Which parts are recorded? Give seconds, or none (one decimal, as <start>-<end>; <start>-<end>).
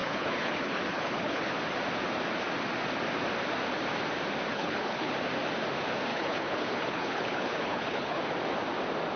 1.5-4.5; 5.1-6.1; 8.2-9.2